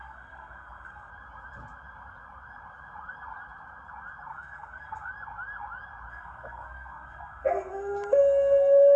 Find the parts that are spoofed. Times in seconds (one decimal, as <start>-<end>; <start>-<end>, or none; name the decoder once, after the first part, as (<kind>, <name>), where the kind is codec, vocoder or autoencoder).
0.0-1.1 (codec, SNAC); 4.3-5.1; 6.1-9.0